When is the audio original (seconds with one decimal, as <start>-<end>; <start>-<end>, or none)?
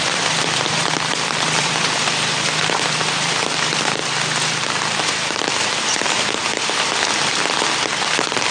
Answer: 4.0-5.3; 7.9-8.5